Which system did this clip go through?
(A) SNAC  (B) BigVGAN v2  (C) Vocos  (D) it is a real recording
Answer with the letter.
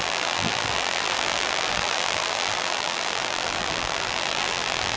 B